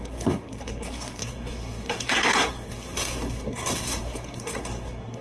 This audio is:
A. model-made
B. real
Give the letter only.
A